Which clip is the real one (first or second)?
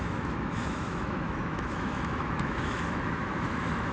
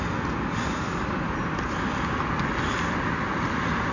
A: second